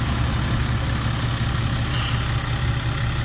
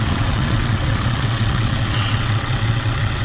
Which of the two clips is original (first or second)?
first